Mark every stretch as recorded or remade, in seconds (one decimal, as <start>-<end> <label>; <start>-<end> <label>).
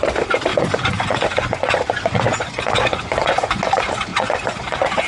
0.0-0.5 recorded; 0.5-3.6 remade; 3.6-4.1 recorded; 4.1-5.1 remade